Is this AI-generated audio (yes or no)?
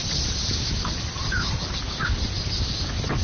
no